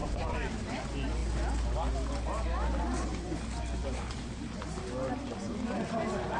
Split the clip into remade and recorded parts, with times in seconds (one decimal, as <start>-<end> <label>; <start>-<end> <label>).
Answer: 0.0-0.6 remade; 0.6-3.8 recorded; 3.8-4.8 remade; 4.8-6.4 recorded